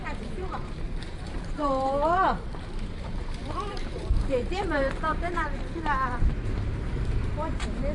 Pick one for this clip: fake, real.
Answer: fake